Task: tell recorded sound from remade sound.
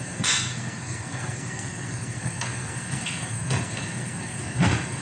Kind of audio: remade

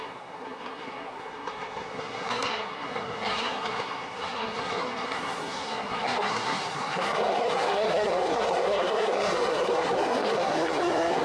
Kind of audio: remade